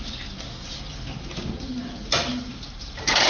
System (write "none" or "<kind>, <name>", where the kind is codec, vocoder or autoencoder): none